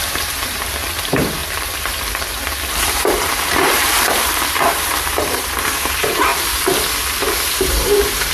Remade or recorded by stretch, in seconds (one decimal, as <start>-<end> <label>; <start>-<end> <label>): 0.0-1.4 remade; 1.4-2.8 recorded; 2.8-6.3 remade; 6.3-7.6 recorded; 7.6-8.3 remade